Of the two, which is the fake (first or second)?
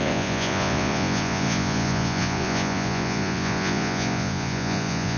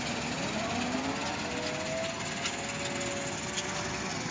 first